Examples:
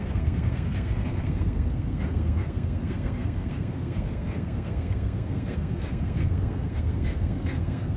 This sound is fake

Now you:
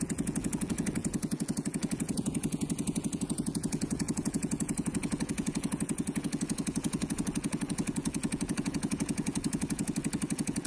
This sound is fake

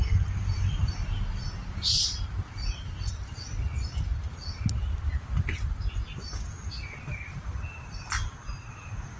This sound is real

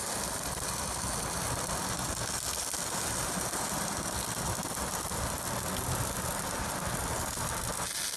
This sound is real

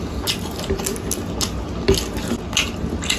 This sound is real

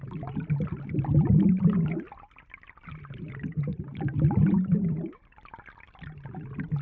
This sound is real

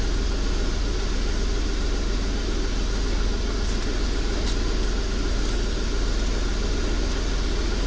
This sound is real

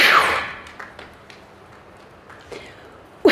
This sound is real